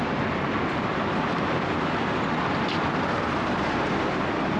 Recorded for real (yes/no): yes